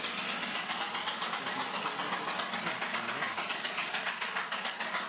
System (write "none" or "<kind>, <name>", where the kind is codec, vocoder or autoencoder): none